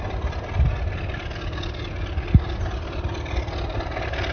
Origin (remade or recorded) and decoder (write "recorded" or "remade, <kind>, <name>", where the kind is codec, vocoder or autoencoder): recorded